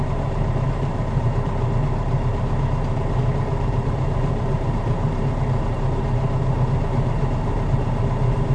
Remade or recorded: remade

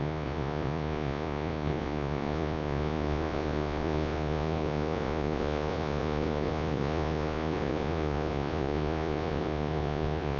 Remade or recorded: remade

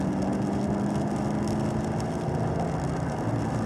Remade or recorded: recorded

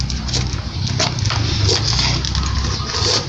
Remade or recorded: recorded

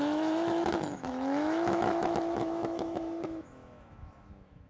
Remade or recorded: remade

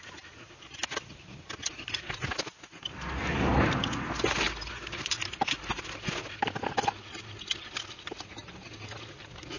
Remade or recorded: recorded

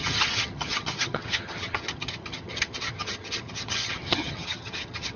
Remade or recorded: remade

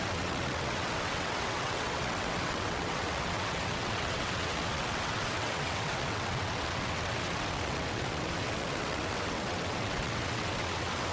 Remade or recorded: remade